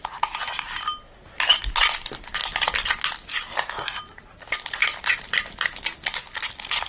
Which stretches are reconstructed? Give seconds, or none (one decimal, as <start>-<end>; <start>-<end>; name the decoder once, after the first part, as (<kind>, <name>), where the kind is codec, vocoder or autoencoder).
none

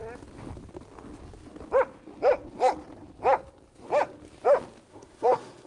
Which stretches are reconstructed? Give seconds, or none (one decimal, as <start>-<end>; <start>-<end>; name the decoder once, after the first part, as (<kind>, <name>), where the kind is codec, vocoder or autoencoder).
4.9-5.7 (codec, SNAC)

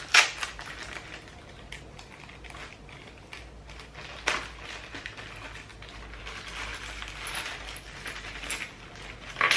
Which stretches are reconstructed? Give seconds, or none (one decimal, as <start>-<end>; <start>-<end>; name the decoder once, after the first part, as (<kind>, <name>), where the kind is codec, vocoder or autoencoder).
none

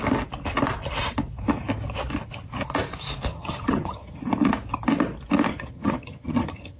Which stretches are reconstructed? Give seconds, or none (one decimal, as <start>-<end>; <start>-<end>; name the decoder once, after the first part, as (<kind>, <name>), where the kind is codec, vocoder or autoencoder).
3.3-4.2 (vocoder, HiFi-GAN); 5.5-6.8

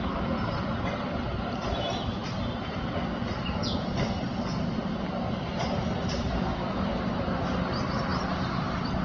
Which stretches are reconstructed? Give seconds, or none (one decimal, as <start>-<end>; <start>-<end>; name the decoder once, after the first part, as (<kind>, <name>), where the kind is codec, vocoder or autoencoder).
none